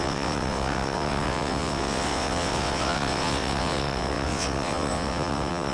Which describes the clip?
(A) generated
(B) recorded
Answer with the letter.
A